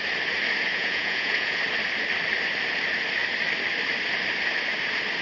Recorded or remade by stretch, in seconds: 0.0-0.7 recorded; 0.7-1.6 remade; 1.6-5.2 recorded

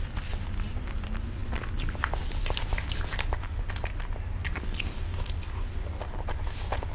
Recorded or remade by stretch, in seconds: 0.0-6.9 recorded

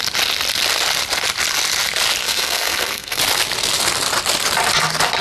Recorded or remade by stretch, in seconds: 0.0-2.2 recorded; 2.2-3.2 remade; 3.2-5.2 recorded

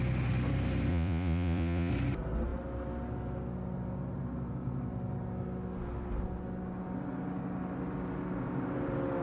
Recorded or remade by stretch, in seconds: 0.0-0.9 recorded; 0.9-1.9 remade; 1.9-9.2 recorded

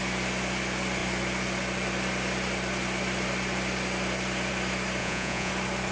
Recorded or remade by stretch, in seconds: 0.0-5.0 recorded; 5.0-5.5 remade; 5.5-5.9 recorded

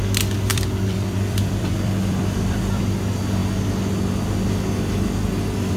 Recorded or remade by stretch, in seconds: 0.0-0.5 recorded; 0.5-2.8 remade; 2.8-5.8 recorded